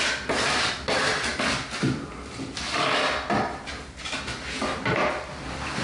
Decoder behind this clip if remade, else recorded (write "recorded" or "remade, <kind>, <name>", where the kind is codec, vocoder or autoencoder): recorded